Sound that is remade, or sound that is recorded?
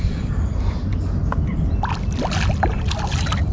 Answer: recorded